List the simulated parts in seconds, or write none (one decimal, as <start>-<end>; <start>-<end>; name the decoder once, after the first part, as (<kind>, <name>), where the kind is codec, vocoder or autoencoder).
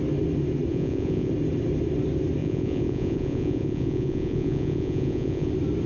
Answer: 0.7-1.3 (vocoder, Vocos); 2.4-5.5